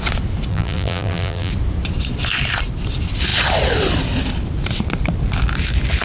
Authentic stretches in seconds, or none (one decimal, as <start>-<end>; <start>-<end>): 0.0-0.5; 1.5-6.0